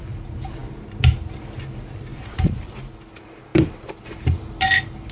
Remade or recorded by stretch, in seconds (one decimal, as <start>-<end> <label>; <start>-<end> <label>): 0.0-2.1 recorded; 2.1-3.0 remade; 3.0-5.1 recorded